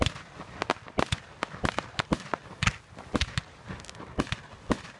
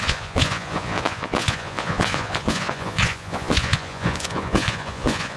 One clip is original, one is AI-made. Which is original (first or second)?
first